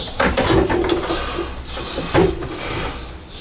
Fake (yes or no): no